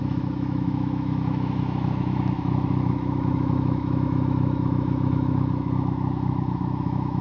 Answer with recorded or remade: remade